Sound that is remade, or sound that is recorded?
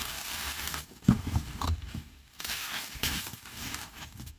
remade